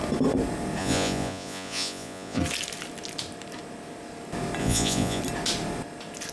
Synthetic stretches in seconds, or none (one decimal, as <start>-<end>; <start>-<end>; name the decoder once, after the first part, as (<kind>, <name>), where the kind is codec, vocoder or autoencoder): 0.8-2.4 (vocoder, Vocos); 4.6-5.2